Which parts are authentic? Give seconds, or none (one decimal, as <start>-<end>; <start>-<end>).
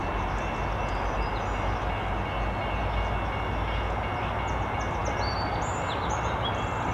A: 0.0-6.9